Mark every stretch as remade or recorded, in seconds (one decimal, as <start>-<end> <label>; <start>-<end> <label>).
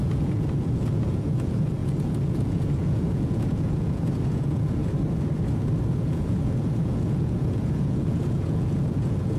0.0-4.8 remade; 4.8-5.9 recorded; 5.9-9.4 remade